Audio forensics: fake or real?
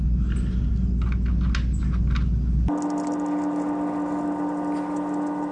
real